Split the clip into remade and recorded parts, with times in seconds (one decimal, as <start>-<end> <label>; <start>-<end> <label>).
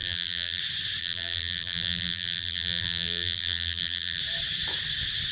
0.0-0.6 remade; 0.6-1.0 recorded; 1.0-4.2 remade; 4.2-5.3 recorded